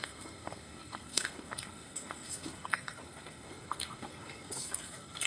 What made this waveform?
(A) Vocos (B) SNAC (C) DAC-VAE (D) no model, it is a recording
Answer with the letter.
B